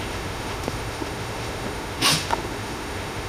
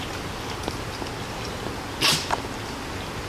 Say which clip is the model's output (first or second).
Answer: first